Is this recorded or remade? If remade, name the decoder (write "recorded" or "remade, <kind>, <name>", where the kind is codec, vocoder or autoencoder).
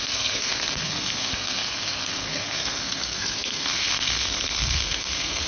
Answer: remade, codec, SNAC